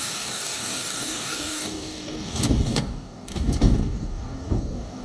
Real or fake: fake